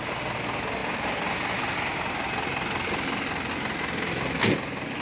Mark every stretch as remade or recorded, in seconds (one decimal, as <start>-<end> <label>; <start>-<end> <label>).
0.0-5.0 recorded